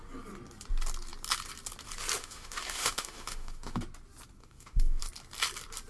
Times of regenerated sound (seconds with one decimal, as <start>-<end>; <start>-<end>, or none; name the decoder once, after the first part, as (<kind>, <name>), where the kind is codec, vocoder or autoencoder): 2.2-3.8 (autoencoder, DAC-VAE); 4.4-5.0